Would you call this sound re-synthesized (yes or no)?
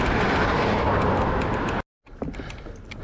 no